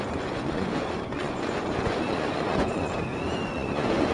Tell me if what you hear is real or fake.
fake